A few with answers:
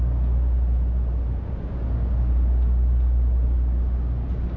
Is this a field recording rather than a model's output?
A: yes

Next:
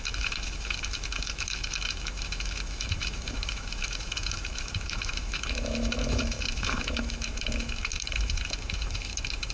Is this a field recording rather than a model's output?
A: no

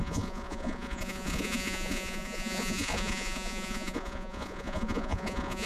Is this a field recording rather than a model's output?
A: no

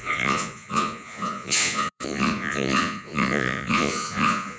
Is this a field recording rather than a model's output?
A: no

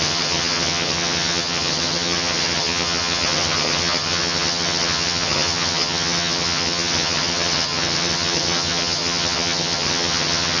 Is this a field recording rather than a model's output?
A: no